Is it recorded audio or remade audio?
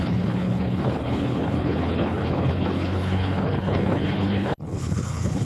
remade